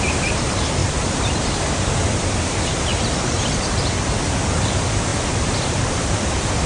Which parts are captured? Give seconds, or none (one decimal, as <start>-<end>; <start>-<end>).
0.0-0.8; 1.6-2.9; 3.6-5.1; 6.2-6.7